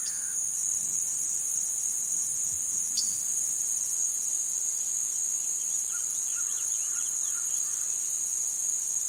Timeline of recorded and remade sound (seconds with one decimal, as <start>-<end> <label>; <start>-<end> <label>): 0.0-1.1 recorded; 1.1-4.7 remade; 4.7-9.1 recorded